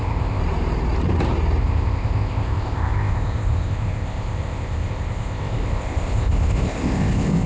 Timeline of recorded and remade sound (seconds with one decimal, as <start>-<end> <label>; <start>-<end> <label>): 0.0-0.4 remade; 0.4-1.6 recorded; 1.6-7.5 remade